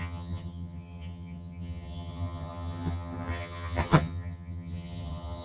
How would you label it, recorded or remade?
remade